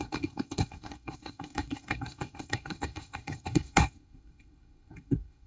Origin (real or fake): fake